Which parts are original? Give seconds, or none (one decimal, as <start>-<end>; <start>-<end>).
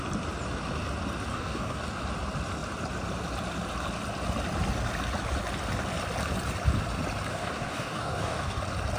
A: 0.0-1.3; 1.8-7.3; 8.6-9.0